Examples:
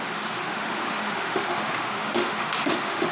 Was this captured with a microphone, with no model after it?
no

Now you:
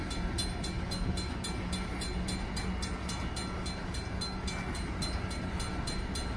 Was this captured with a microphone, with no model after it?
yes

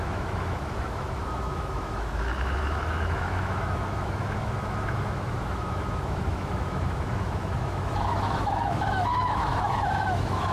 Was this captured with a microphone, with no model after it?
no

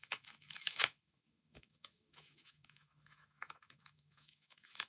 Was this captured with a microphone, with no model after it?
no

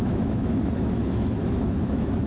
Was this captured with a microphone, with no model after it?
no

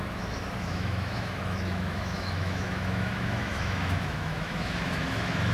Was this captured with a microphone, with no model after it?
no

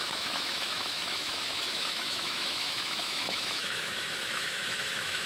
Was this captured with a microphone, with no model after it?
no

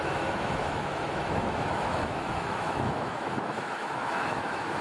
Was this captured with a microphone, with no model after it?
no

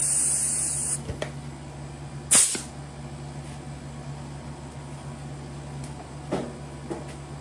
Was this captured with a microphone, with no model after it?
yes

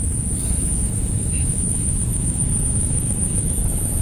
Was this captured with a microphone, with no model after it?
no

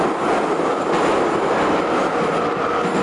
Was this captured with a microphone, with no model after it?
yes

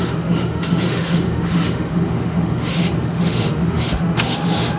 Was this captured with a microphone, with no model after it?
no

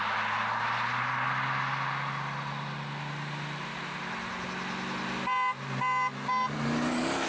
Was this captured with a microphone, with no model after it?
yes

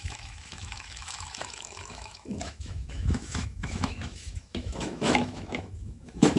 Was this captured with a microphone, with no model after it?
no